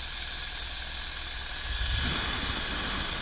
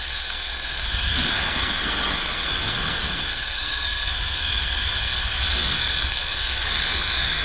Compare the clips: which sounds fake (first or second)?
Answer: second